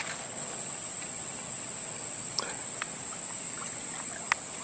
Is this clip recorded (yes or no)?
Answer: yes